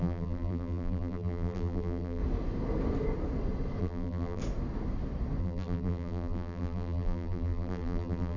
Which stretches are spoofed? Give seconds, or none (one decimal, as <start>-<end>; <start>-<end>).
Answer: 0.0-2.2; 3.8-4.4; 5.4-8.4